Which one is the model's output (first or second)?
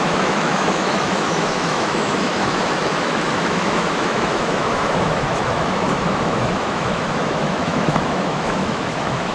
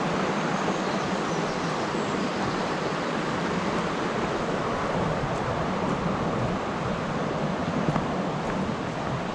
first